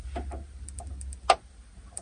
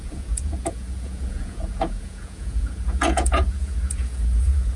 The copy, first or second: second